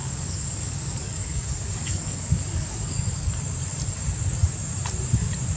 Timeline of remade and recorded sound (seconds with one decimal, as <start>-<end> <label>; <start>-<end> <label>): 0.0-3.4 remade; 3.4-5.6 recorded